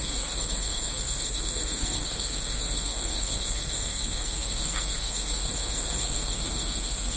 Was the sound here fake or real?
fake